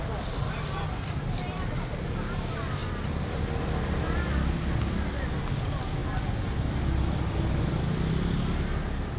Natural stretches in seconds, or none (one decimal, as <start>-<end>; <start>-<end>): 0.0-9.2